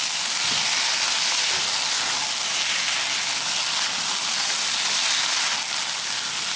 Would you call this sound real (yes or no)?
yes